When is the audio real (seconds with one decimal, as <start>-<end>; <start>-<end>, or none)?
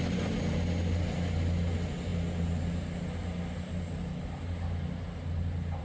0.0-5.8